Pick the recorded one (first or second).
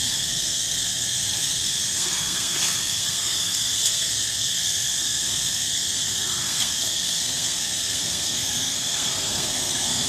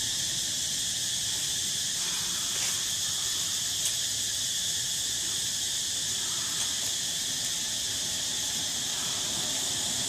second